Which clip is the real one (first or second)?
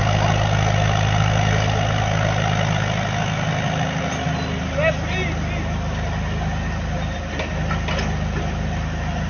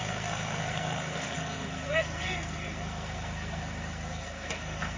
first